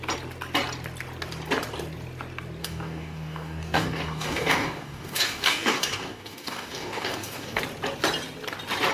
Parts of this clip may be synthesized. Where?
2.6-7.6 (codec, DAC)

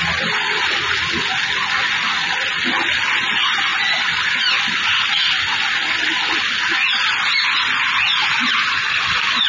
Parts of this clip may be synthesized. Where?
none